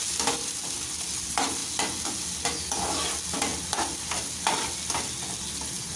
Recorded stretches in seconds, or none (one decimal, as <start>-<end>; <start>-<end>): 0.0-6.0